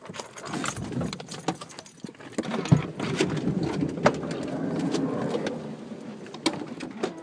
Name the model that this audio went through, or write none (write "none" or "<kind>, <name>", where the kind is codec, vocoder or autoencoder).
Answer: none